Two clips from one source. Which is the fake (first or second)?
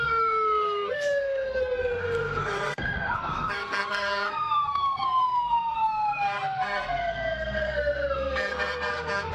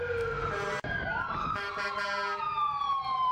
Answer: first